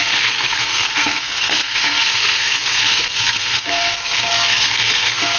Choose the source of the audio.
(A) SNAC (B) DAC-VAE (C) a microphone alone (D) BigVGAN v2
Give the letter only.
A